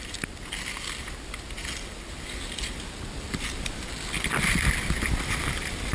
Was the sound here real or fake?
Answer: fake